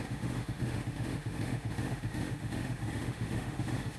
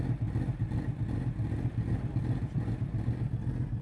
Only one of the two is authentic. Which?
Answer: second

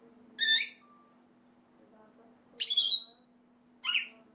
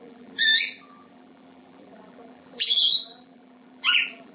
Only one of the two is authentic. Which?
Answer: first